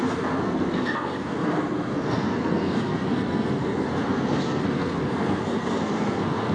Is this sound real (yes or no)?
no